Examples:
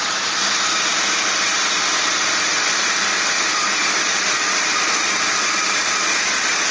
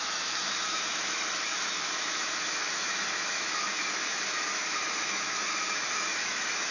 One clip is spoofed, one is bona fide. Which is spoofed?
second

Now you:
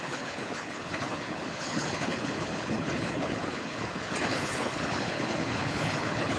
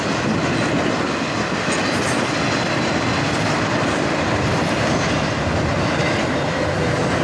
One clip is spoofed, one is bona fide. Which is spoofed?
first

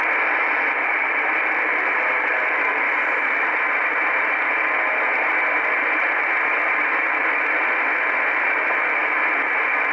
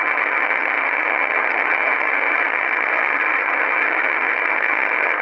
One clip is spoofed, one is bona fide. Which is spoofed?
second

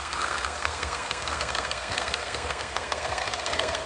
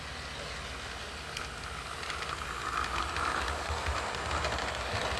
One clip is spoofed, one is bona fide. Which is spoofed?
first